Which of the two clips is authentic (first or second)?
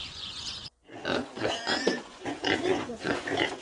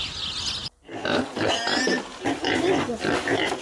second